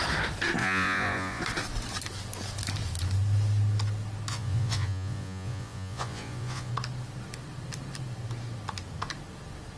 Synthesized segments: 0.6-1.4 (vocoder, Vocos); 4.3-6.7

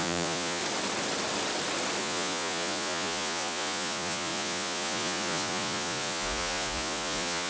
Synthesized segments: 0.0-0.6 (vocoder, Vocos); 2.0-7.5

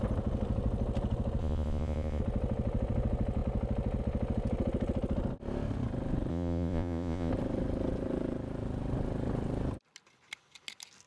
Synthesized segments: 1.4-2.2 (vocoder, Vocos); 6.3-7.3

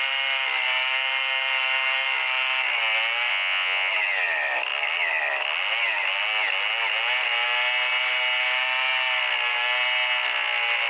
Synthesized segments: 3.3-3.9 (vocoder, Vocos)

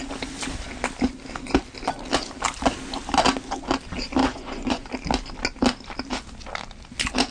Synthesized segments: 4.2-4.9 (vocoder, Vocos)

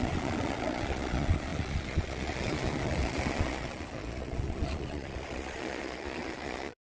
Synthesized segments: 0.0-6.8 (vocoder, Vocos)

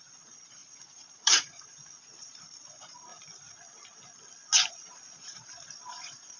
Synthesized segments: 0.0-3.1 (vocoder, Vocos); 4.7-6.4

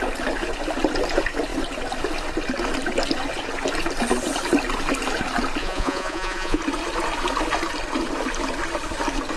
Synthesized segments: 5.6-6.6 (vocoder, Vocos)